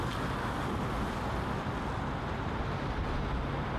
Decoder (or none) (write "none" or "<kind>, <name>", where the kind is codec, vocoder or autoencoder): none